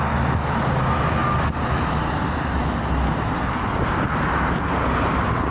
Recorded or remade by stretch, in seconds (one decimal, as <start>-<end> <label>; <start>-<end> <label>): 0.0-5.5 recorded